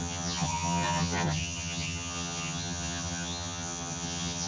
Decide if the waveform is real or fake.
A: fake